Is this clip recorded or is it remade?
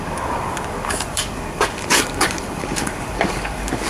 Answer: remade